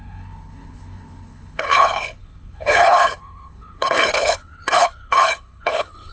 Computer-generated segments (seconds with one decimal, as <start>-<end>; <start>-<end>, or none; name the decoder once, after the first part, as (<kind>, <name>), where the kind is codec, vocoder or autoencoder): 0.0-6.1 (codec, HILCodec)